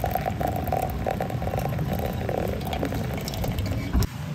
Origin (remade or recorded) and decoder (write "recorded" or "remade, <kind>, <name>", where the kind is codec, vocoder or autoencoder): recorded